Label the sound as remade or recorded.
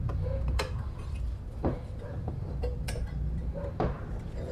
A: remade